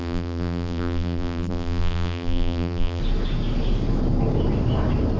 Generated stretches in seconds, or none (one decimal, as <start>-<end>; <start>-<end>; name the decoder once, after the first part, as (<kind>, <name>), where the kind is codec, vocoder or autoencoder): 0.0-3.0 (vocoder, BigVGAN v2)

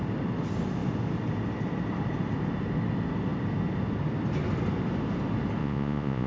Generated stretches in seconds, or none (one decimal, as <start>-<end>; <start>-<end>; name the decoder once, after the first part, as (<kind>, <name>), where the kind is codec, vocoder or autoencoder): 5.6-6.3 (vocoder, Vocos)

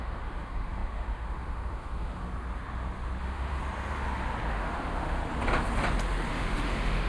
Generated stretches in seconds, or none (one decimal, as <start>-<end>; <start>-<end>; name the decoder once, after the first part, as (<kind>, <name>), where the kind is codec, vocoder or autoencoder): 0.0-2.3 (autoencoder, DAC-VAE); 3.2-3.6; 4.5-5.2; 6.3-7.1

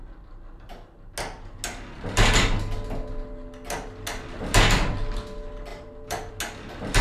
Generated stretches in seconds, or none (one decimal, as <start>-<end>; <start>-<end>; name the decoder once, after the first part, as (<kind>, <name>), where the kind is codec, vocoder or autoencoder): 5.7-6.3 (vocoder, BigVGAN v2)

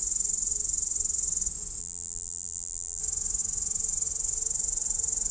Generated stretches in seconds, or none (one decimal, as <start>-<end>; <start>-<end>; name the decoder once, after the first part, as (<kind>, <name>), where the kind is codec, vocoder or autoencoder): 1.8-3.0 (vocoder, BigVGAN v2)

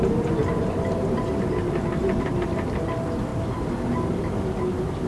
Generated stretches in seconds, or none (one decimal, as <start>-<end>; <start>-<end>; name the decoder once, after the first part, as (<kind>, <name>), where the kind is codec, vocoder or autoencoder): none

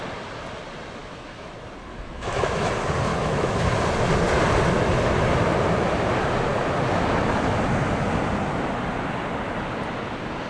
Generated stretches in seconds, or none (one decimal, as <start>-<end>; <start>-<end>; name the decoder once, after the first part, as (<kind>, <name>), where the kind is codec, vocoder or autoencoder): 1.0-1.5 (autoencoder, DAC-VAE); 1.9-2.7; 3.1-3.7